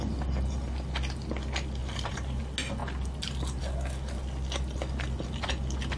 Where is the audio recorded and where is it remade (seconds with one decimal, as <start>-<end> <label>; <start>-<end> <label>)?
0.0-1.8 recorded; 1.8-2.4 remade; 2.4-6.0 recorded